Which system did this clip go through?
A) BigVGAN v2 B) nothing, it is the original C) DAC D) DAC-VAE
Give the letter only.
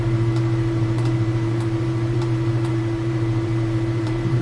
A